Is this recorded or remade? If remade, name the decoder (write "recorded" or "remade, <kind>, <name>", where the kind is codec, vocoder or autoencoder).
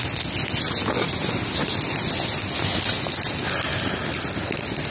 recorded